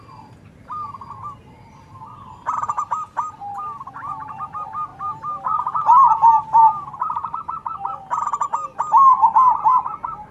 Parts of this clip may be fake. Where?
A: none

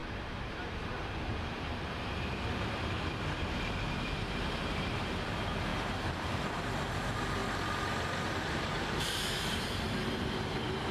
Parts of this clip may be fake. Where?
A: 0.0-7.4 (vocoder, BigVGAN v2); 8.4-10.9

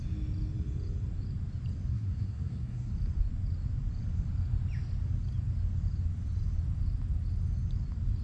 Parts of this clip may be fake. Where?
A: 1.9-2.9 (codec, SNAC)